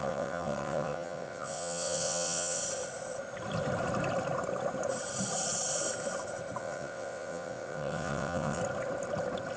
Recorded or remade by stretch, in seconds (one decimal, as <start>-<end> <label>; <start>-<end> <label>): 0.0-2.6 remade; 2.6-6.6 recorded; 6.6-8.6 remade; 8.6-9.6 recorded